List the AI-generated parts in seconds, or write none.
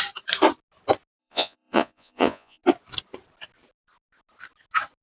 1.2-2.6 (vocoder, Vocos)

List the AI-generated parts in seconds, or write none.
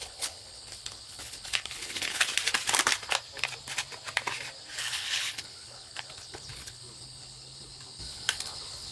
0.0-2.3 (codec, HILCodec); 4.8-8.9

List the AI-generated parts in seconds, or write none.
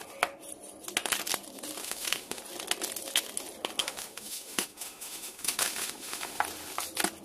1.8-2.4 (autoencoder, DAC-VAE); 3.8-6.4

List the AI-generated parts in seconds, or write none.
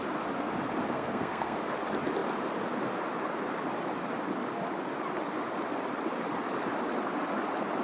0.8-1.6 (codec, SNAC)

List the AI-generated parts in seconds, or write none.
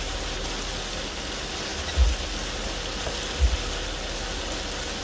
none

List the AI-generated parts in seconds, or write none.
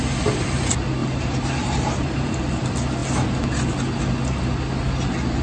1.0-2.3 (vocoder, BigVGAN v2)